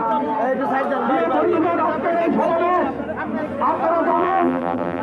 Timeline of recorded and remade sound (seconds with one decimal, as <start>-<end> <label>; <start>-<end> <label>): 0.0-4.1 recorded; 4.1-5.0 remade

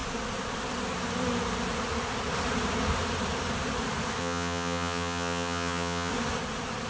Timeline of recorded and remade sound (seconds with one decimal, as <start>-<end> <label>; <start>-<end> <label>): 0.0-4.2 recorded; 4.2-6.1 remade; 6.1-6.9 recorded

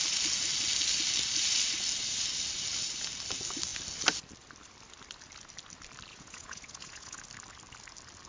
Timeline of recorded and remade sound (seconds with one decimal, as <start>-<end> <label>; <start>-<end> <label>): 0.0-6.1 recorded; 6.1-7.2 remade; 7.2-8.3 recorded